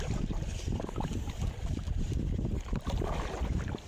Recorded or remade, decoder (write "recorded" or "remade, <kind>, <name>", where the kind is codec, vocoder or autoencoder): recorded